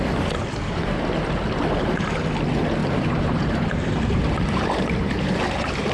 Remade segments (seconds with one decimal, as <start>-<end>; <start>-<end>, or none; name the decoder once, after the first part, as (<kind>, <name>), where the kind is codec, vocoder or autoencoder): 2.8-5.9 (vocoder, BigVGAN v2)